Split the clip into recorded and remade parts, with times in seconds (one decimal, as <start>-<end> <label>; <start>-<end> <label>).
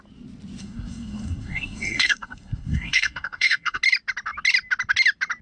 0.0-0.6 recorded; 0.6-3.8 remade; 3.8-5.4 recorded